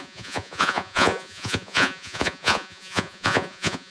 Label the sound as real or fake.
fake